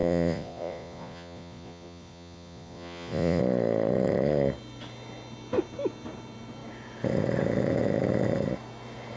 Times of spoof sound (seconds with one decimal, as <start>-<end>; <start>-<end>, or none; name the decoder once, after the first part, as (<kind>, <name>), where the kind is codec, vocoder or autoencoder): 0.0-3.4 (vocoder, Vocos)